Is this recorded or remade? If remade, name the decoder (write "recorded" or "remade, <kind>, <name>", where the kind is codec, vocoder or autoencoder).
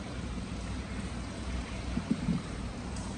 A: remade, vocoder, BigVGAN v2